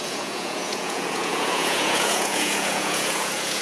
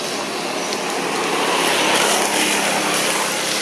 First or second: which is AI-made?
first